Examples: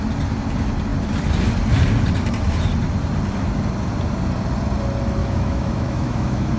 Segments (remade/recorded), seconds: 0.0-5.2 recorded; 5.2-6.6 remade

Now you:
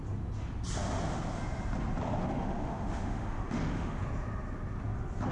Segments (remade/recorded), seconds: 0.0-2.2 recorded; 2.2-4.0 remade; 4.0-5.3 recorded

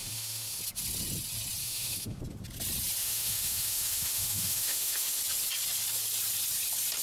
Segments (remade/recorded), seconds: 0.0-0.6 remade; 0.6-1.6 recorded; 1.6-2.2 remade; 2.2-3.0 recorded; 3.0-5.2 remade; 5.2-7.0 recorded

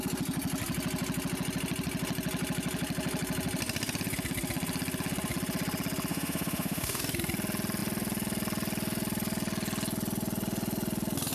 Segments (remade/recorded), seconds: 0.0-6.1 recorded; 6.1-7.0 remade; 7.0-11.3 recorded

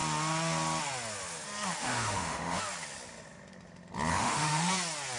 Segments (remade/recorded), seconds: 0.0-1.8 recorded; 1.8-2.6 remade; 2.6-4.1 recorded; 4.1-4.7 remade; 4.7-5.2 recorded

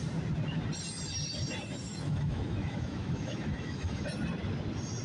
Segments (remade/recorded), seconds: 0.0-1.9 recorded; 1.9-4.0 remade; 4.0-5.0 recorded

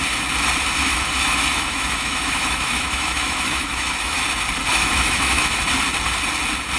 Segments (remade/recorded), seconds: 0.0-0.8 recorded; 0.8-4.2 remade; 4.2-4.7 recorded; 4.7-5.7 remade; 5.7-6.8 recorded